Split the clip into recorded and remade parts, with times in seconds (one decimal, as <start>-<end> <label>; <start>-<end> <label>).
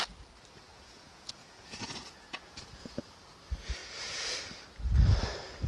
0.0-0.7 recorded; 0.7-3.0 remade; 3.0-3.8 recorded; 3.8-4.4 remade; 4.4-5.7 recorded